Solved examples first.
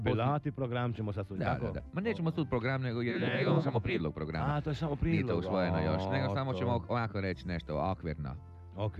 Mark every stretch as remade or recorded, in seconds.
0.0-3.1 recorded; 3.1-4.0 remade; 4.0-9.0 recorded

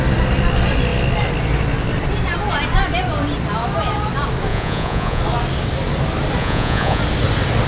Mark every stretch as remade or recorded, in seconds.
0.0-4.5 recorded; 4.5-5.2 remade; 5.2-6.4 recorded; 6.4-7.0 remade; 7.0-7.7 recorded

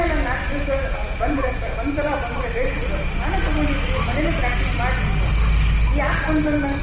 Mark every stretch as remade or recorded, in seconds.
0.0-0.5 recorded; 0.5-1.6 remade; 1.6-6.8 recorded

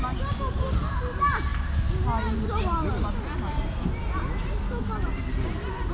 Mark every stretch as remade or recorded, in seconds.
0.0-5.9 recorded

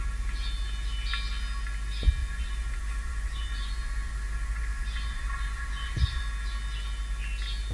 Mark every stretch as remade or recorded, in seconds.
0.0-2.2 recorded; 2.2-6.2 remade; 6.2-7.7 recorded

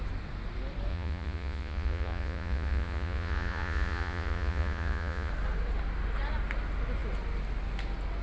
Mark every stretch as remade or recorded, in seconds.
0.0-0.9 recorded; 0.9-5.3 remade; 5.3-8.2 recorded